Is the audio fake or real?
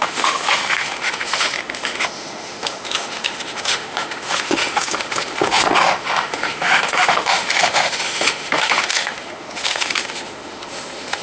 fake